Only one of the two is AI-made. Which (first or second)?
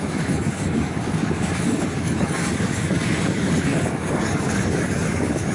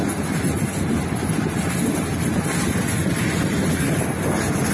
first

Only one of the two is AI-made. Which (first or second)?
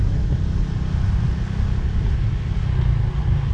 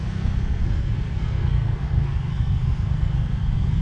second